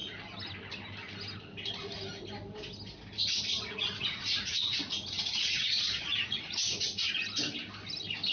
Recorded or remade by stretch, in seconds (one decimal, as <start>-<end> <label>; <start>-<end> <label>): 0.0-3.5 recorded; 3.5-7.1 remade; 7.1-8.3 recorded